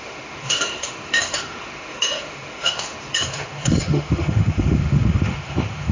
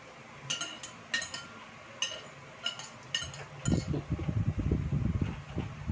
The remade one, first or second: first